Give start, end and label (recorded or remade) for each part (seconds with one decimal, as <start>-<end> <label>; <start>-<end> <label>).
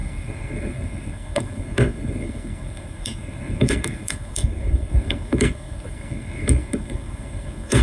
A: 0.0-7.8 remade